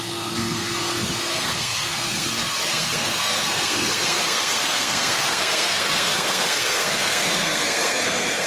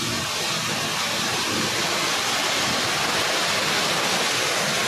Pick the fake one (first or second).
first